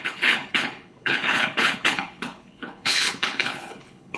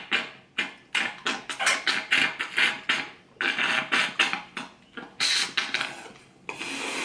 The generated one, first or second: first